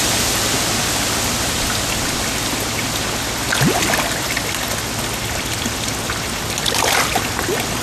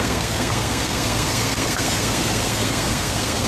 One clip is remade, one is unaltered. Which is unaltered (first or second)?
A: first